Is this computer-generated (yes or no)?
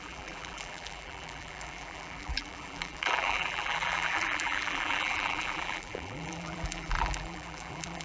yes